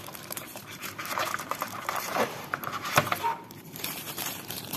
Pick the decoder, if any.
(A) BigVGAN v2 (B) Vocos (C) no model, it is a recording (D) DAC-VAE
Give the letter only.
A